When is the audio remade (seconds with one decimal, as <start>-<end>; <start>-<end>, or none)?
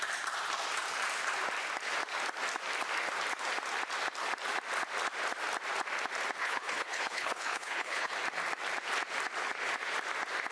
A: 6.4-8.1